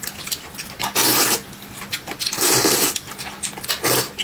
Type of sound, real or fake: real